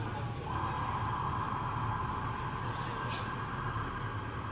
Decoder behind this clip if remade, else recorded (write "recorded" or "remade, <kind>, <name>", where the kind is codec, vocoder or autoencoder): recorded